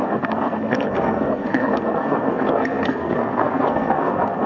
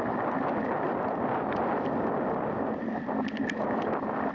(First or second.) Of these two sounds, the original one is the second